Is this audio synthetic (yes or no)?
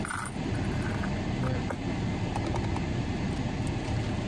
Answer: no